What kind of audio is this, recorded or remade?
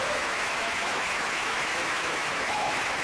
remade